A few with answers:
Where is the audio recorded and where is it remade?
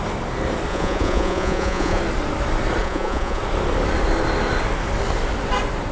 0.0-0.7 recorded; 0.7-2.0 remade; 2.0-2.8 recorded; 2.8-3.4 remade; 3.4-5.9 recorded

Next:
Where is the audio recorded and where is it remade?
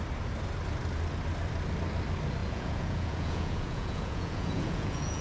0.0-2.4 recorded; 2.4-5.2 remade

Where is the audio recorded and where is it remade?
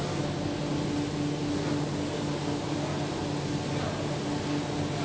0.0-5.0 recorded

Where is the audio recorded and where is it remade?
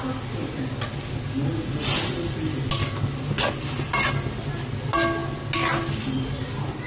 0.0-6.9 recorded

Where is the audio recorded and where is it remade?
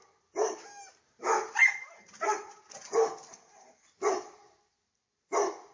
0.0-5.7 recorded